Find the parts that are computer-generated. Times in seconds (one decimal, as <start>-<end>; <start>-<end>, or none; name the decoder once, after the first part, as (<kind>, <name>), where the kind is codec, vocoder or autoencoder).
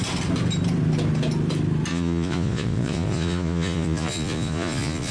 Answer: 1.9-5.1 (vocoder, Vocos)